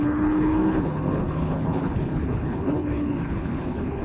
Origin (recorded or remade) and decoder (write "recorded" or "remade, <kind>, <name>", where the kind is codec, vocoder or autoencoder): remade, codec, HILCodec